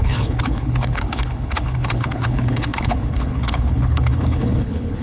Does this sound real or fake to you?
fake